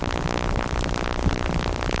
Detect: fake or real fake